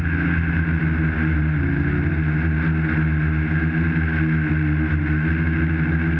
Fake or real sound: real